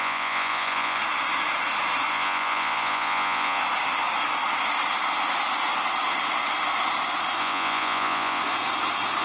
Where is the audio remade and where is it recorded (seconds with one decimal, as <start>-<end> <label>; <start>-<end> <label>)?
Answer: 0.0-1.0 remade; 1.0-2.1 recorded; 2.1-3.6 remade; 3.6-7.4 recorded; 7.4-8.4 remade; 8.4-9.2 recorded